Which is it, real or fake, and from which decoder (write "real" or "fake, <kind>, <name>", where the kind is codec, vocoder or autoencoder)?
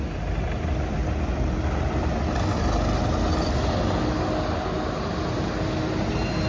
real